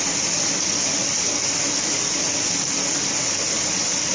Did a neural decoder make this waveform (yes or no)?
no